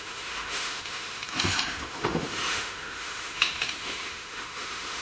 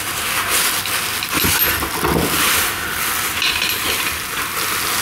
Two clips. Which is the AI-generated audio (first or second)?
first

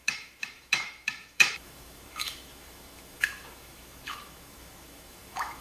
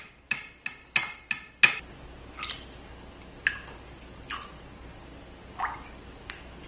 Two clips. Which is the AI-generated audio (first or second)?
first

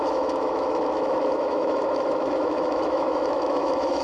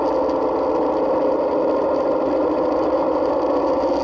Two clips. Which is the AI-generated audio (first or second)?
first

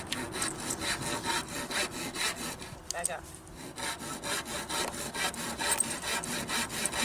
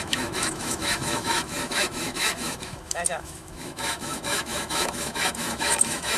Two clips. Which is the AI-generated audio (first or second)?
second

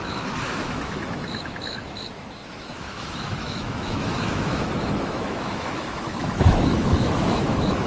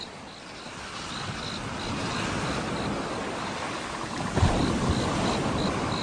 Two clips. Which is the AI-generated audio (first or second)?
first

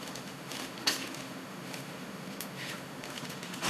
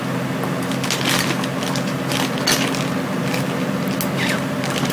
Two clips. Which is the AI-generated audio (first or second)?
first